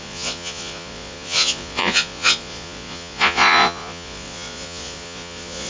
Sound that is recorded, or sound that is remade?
remade